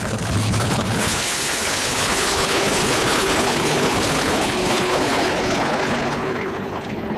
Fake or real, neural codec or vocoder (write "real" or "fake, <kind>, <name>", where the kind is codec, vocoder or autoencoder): fake, codec, HILCodec